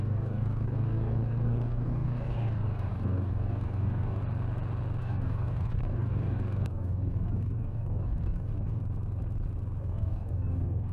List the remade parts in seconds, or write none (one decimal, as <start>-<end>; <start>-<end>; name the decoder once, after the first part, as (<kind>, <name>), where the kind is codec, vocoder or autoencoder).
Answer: 0.0-4.2 (codec, DAC); 5.0-8.8; 9.8-10.9